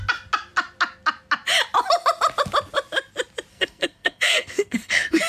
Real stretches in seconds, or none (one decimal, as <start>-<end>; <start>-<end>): 0.0-3.5